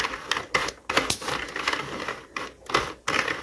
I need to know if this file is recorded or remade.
recorded